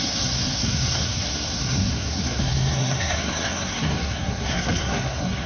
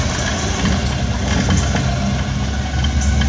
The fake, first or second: first